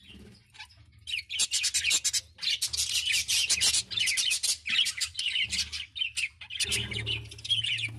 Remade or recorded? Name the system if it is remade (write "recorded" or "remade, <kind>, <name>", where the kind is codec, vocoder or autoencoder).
recorded